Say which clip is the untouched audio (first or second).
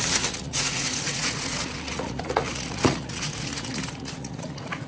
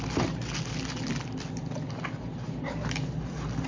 second